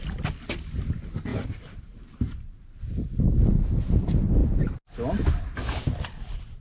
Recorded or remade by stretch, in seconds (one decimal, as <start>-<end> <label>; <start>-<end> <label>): 0.0-1.3 recorded; 1.3-2.8 remade; 2.8-6.6 recorded